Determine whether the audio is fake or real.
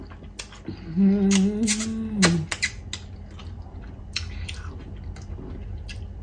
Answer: real